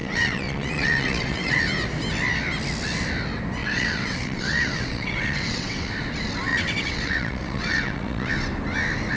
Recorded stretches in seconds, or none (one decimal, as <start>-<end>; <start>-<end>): 1.6-3.6; 5.9-6.5; 8.3-9.2